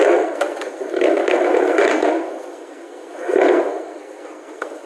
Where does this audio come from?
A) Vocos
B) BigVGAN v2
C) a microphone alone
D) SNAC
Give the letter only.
D